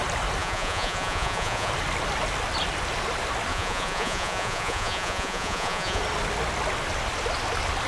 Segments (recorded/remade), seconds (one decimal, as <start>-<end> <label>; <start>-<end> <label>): 0.0-0.4 recorded; 0.4-1.7 remade; 1.7-3.5 recorded; 3.5-6.0 remade; 6.0-7.9 recorded